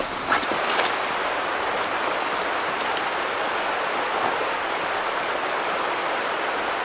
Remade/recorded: recorded